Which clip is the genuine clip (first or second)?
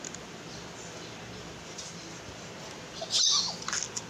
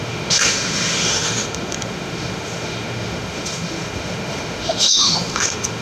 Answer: first